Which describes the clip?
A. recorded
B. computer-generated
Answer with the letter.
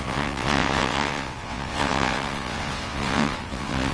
B